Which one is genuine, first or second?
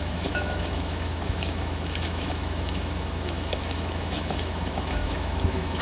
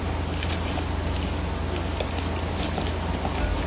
second